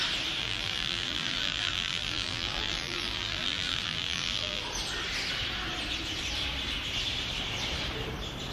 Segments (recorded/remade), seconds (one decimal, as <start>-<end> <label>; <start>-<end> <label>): 0.0-0.4 recorded; 0.4-4.6 remade; 4.6-8.5 recorded